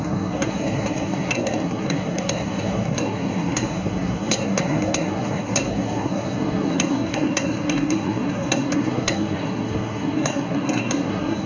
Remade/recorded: remade